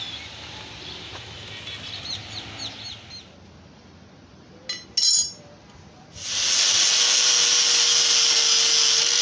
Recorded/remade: recorded